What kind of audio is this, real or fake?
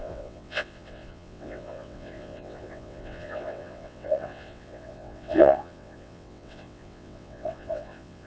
fake